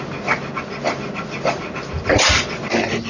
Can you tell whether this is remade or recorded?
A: recorded